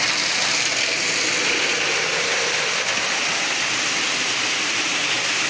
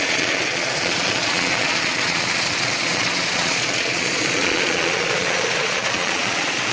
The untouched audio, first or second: first